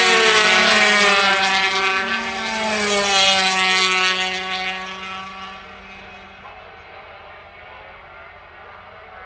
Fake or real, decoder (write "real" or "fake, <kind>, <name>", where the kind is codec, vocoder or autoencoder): real